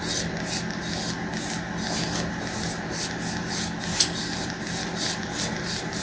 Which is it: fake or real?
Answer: real